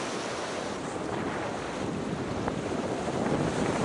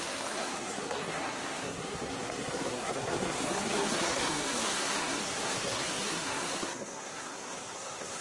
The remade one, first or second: second